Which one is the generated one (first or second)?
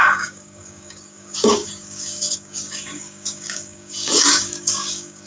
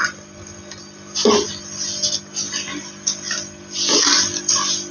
first